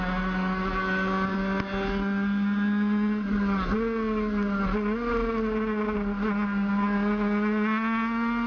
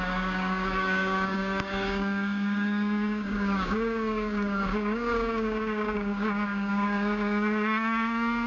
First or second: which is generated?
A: second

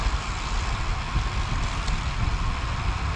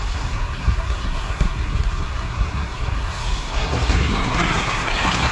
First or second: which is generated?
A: second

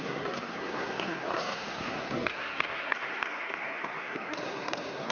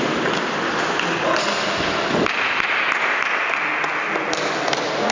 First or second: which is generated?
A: first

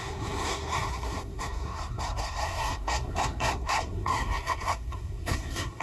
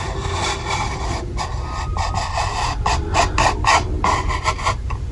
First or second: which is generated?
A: first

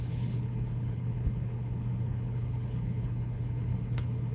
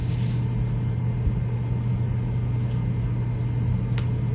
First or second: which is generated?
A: first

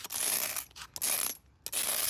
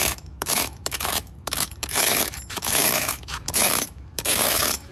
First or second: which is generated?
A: second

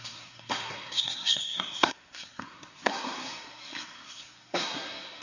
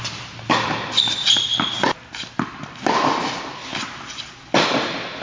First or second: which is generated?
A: first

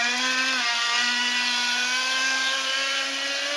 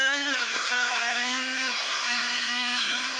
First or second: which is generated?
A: second